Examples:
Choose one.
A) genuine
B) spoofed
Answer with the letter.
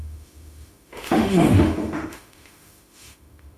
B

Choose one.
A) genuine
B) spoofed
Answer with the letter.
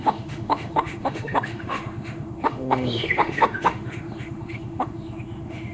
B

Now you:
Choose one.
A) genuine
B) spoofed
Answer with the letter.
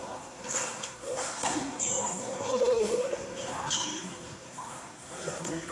B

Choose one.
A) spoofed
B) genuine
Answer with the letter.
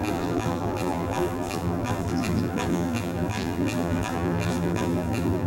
A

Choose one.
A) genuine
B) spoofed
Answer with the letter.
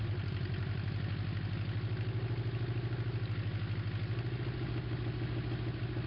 A